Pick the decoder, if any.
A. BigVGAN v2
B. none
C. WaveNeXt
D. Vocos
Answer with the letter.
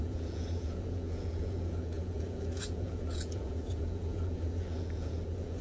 D